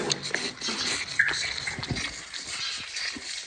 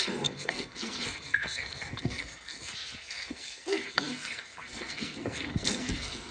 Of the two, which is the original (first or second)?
first